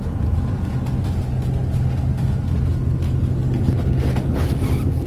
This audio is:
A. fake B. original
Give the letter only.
B